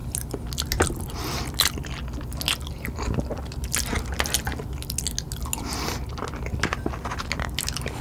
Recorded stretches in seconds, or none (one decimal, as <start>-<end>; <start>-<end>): 0.0-8.0